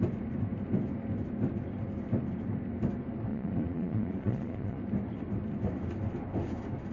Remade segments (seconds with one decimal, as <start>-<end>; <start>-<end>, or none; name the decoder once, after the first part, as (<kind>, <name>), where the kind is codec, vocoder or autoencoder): 3.3-4.8 (vocoder, Vocos)